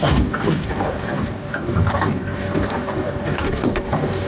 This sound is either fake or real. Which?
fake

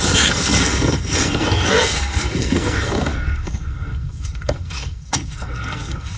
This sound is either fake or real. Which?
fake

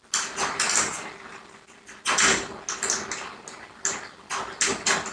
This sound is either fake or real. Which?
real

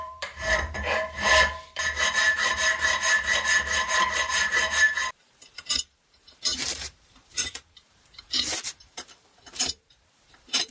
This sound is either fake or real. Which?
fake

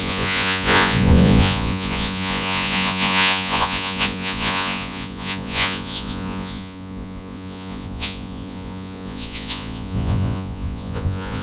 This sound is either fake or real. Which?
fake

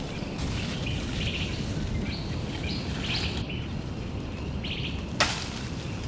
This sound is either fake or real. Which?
real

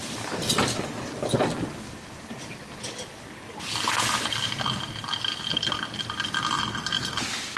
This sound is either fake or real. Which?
real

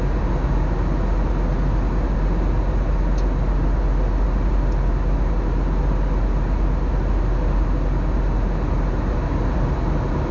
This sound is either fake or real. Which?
real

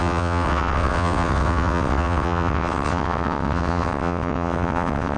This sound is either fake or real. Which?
fake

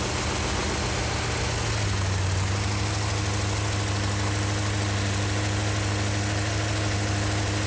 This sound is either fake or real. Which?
real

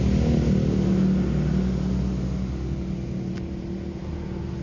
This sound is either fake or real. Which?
real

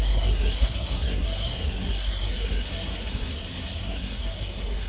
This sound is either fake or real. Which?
fake